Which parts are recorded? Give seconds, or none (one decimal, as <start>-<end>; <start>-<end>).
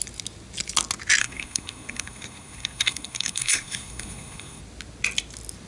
0.0-1.2; 4.6-5.7